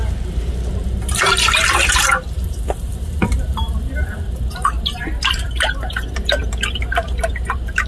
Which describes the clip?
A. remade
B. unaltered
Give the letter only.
A